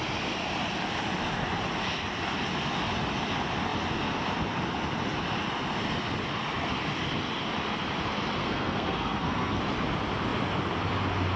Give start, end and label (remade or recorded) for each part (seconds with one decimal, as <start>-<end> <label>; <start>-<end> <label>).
0.0-8.4 recorded; 8.4-9.6 remade; 9.6-11.4 recorded

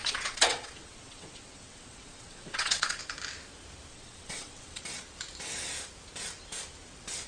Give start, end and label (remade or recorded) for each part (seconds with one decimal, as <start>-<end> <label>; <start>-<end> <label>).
0.0-3.0 remade; 3.0-3.9 recorded; 3.9-4.8 remade; 4.8-7.3 recorded

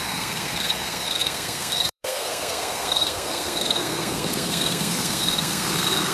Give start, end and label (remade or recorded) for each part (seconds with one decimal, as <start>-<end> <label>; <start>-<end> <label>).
0.0-6.1 remade